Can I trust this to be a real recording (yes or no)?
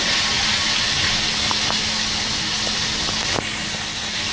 yes